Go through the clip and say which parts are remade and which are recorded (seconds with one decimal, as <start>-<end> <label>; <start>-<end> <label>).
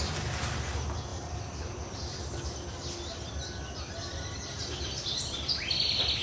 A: 0.0-6.2 recorded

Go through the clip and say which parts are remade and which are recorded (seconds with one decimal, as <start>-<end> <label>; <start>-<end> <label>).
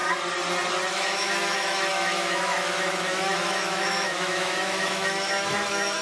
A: 0.0-0.9 recorded; 0.9-6.0 remade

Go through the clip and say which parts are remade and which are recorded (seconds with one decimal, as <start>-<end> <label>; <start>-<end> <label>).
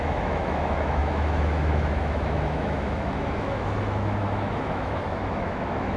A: 0.0-6.0 remade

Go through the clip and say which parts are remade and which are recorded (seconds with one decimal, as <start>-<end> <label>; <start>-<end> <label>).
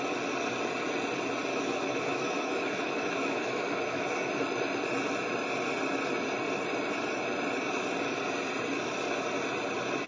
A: 0.0-1.5 recorded; 1.5-4.3 remade; 4.3-10.1 recorded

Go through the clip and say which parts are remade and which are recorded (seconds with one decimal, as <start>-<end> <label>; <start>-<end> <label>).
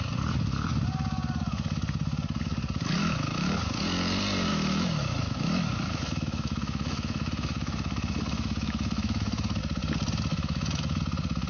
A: 0.0-3.0 recorded; 3.0-3.6 remade; 3.6-4.5 recorded; 4.5-9.6 remade; 9.6-10.3 recorded; 10.3-11.0 remade; 11.0-11.5 recorded